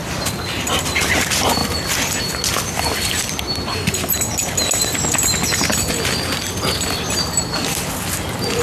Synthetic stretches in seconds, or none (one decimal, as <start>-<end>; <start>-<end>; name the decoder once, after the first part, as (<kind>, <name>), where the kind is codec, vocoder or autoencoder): none